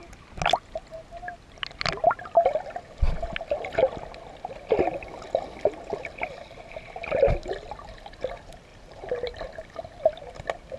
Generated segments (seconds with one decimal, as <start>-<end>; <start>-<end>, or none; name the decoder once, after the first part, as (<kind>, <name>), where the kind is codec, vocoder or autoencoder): 8.7-10.0 (vocoder, BigVGAN v2)